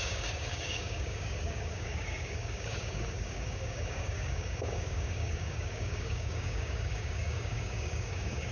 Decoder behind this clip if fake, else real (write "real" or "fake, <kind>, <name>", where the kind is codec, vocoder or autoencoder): fake, codec, DAC